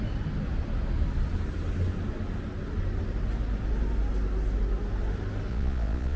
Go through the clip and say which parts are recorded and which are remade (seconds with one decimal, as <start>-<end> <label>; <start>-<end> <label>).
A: 0.0-5.5 recorded; 5.5-6.2 remade